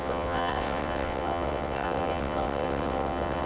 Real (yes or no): no